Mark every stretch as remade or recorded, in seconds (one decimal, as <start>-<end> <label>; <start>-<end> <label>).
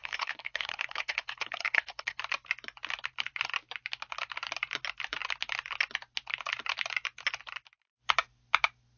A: 0.0-2.2 remade; 2.2-9.0 recorded